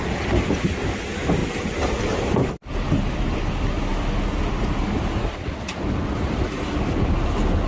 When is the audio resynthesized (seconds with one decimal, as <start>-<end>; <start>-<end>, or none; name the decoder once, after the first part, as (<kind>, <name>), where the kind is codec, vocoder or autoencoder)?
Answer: 1.4-2.5 (vocoder, BigVGAN v2)